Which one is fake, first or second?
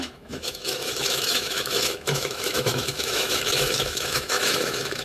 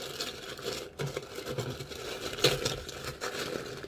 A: first